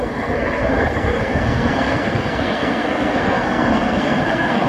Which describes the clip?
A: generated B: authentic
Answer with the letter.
A